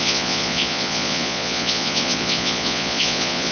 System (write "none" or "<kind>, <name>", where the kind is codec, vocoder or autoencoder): vocoder, Vocos